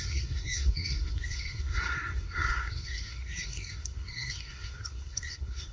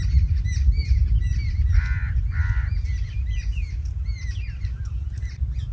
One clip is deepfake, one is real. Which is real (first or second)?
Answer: second